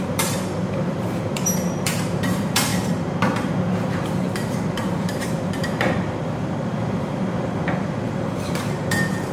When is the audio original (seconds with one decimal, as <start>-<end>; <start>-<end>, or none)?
2.7-3.8